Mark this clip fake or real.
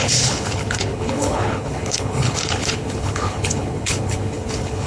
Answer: fake